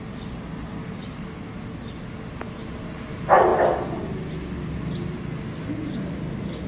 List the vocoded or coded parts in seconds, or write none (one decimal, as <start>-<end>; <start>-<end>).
none